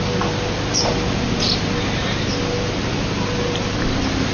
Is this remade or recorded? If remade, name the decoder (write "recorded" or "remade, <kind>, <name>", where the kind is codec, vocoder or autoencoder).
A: recorded